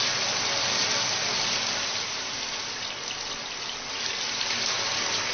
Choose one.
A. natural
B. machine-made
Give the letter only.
A